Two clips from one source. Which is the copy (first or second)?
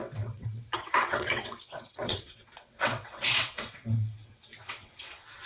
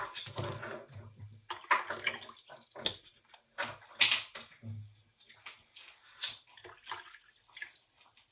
first